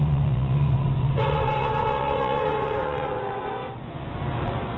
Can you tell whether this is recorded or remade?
remade